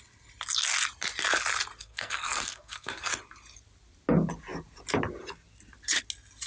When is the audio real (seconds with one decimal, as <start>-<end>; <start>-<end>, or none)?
0.0-1.8; 3.1-6.5